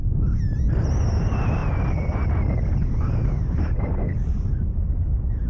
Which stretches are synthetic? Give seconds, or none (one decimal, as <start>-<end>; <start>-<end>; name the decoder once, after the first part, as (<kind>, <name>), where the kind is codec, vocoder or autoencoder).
none